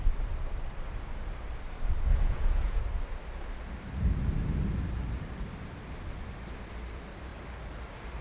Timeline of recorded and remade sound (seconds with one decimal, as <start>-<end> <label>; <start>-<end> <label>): 0.0-2.1 recorded; 2.1-2.8 remade; 2.8-8.2 recorded